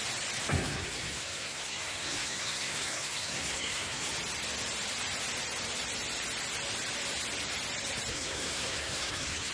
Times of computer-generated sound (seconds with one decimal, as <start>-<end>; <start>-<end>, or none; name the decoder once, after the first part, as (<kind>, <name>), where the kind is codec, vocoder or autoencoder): 0.4-4.1 (codec, SNAC); 8.1-9.5